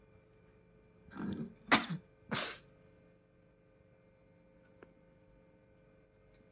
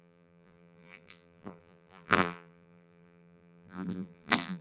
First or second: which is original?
first